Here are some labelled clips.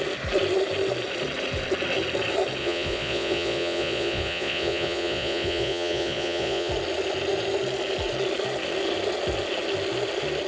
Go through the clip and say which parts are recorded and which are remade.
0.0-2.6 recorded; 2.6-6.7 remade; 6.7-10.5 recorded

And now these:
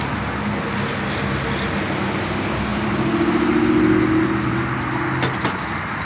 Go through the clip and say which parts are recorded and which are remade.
0.0-6.1 recorded